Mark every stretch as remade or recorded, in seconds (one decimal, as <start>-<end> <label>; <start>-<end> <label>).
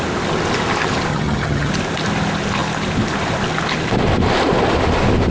0.0-1.1 recorded; 1.1-1.7 remade; 1.7-5.3 recorded